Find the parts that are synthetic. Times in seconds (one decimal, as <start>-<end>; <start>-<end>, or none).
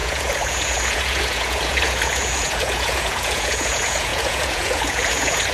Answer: 0.0-5.5